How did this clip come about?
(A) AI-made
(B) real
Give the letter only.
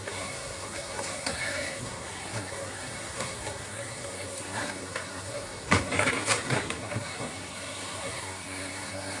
A